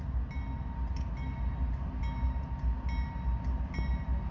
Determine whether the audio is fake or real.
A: real